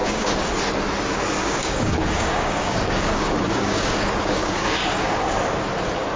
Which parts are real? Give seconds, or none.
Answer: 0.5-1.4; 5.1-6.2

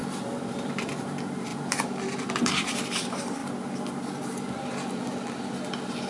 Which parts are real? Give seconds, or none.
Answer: none

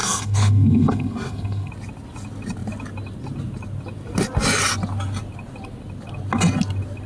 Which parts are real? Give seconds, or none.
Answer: 1.7-7.1

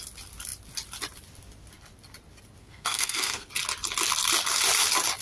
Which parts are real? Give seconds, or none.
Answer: 0.0-2.6; 3.5-5.2

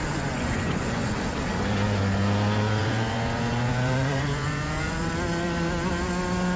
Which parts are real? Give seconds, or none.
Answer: 1.3-2.8; 5.1-6.6